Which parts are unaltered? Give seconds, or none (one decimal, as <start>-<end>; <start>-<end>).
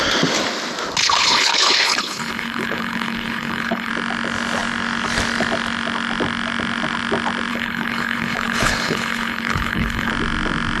0.0-1.0; 3.9-7.5; 10.1-10.8